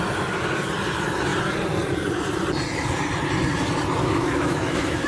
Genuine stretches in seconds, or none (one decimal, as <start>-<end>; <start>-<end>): 0.0-4.0